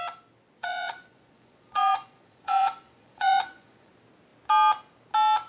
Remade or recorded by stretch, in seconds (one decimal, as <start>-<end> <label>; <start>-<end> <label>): 0.0-0.6 recorded; 0.6-3.9 remade; 3.9-5.5 recorded